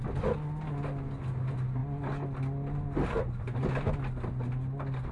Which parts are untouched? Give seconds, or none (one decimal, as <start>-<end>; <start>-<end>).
0.0-5.1